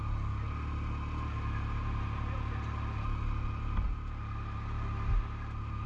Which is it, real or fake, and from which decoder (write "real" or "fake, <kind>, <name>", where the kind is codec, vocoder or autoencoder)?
real